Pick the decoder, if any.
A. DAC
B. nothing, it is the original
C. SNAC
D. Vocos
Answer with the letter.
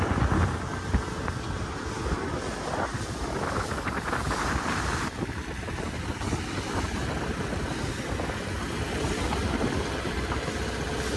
B